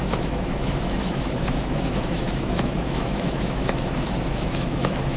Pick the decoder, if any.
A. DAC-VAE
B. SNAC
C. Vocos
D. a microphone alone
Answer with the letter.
A